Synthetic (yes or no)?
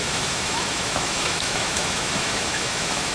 yes